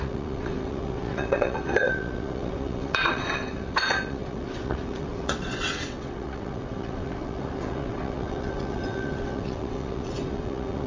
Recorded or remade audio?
remade